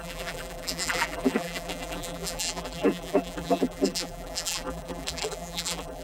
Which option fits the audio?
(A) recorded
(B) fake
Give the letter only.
B